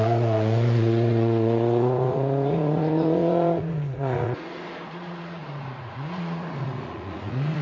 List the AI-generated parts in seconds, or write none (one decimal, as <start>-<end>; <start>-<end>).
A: 0.0-7.6

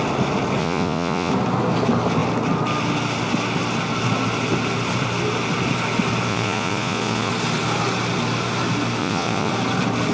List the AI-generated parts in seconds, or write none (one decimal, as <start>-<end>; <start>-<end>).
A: 0.6-1.3; 6.3-7.3; 9.0-9.5